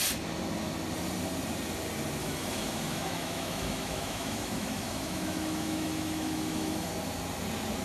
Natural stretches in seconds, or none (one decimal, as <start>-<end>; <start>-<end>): 0.0-2.2; 6.9-7.8

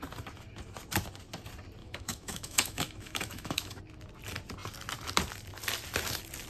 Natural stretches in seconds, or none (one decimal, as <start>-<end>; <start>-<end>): 0.0-1.8; 3.8-6.5

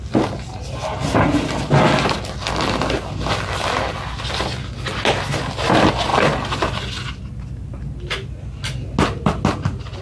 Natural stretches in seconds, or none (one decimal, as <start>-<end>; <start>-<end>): 0.0-10.0